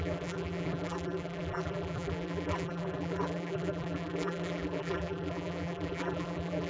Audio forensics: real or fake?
fake